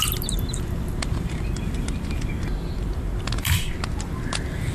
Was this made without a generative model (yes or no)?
yes